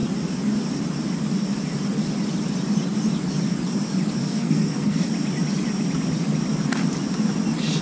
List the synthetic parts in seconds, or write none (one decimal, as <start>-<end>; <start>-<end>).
4.2-5.1